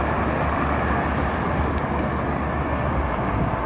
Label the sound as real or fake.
real